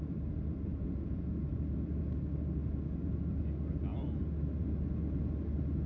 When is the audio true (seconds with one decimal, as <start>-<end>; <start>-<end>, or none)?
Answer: 0.0-0.7; 1.2-5.9